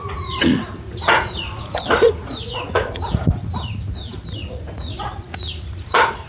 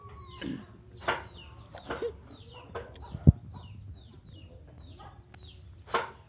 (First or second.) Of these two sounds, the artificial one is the first